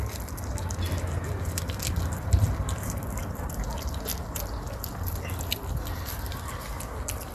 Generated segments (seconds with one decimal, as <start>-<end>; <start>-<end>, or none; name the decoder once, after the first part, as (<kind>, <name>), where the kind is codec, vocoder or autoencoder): none